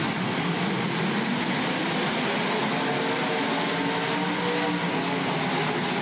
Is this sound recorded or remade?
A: recorded